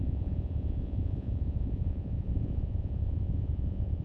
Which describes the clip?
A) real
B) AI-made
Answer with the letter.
B